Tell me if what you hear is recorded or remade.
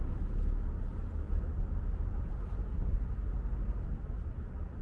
recorded